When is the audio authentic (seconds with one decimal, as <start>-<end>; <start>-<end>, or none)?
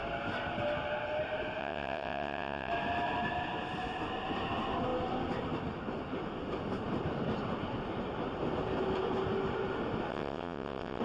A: 0.0-1.6; 2.7-10.1